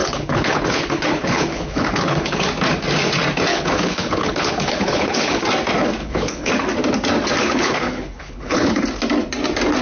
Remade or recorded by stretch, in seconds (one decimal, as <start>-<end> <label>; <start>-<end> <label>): 0.0-2.5 remade; 2.5-3.5 recorded; 3.5-5.4 remade; 5.4-6.0 recorded; 6.0-6.5 remade; 6.5-7.4 recorded; 7.4-8.8 remade; 8.8-9.8 recorded